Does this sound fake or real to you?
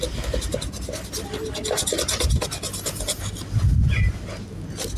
real